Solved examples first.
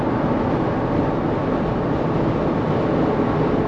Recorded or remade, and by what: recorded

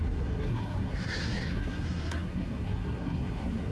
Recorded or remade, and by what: remade, codec, SNAC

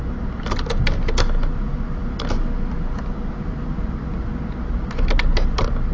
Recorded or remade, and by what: recorded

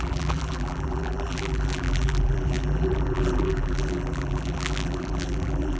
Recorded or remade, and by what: remade, vocoder, BigVGAN v2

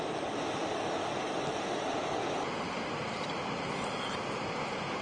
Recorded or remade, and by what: recorded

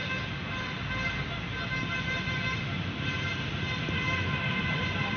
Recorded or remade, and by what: recorded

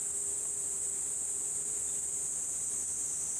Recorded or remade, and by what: recorded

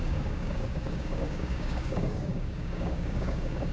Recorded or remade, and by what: remade, codec, DAC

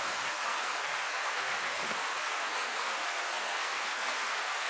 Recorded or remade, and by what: remade, codec, SNAC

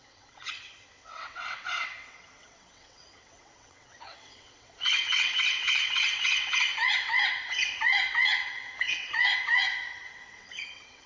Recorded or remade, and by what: remade, vocoder, WaveNeXt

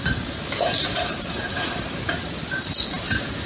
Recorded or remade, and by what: recorded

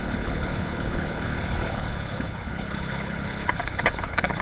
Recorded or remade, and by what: remade, codec, HILCodec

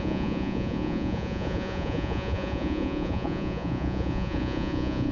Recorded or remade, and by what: remade, vocoder, Vocos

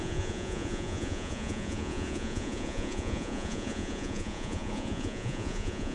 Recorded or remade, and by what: remade, vocoder, Vocos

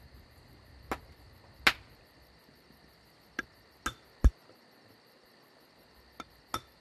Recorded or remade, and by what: recorded